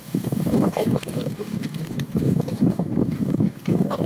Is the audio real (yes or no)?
no